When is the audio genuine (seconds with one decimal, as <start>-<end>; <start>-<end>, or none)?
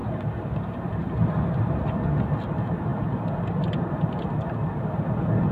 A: 1.7-5.5